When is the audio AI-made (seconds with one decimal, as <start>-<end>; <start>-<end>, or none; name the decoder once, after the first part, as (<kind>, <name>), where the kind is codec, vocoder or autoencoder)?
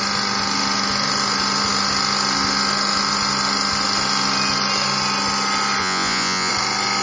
5.8-6.5 (vocoder, Vocos)